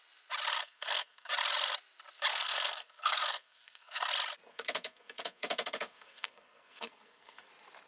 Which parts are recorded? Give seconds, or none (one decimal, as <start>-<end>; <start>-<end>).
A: 0.0-0.6; 1.3-2.3; 4.1-4.5; 7.5-7.9